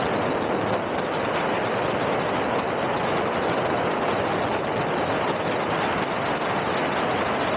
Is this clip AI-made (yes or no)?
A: no